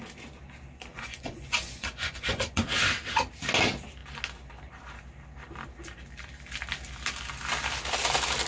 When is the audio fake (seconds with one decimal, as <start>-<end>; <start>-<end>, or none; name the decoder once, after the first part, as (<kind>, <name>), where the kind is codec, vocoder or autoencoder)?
0.9-2.6 (vocoder, Vocos)